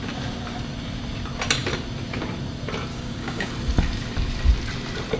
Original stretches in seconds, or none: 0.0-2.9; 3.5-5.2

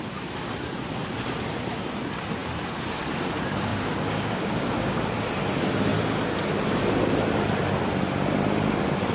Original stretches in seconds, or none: 0.0-3.7; 5.0-9.1

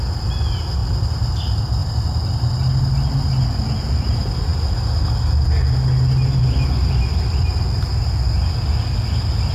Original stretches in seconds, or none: 0.0-9.5

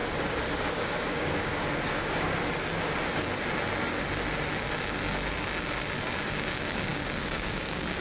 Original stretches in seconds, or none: 0.0-0.6; 1.5-6.3